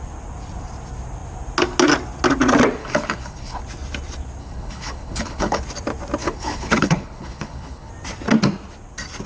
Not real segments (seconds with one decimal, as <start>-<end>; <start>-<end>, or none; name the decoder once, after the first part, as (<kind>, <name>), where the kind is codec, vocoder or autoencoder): 2.8-3.6 (codec, HILCodec); 4.4-5.6; 6.2-7.9